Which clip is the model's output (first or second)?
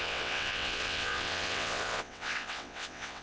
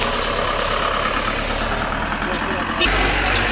first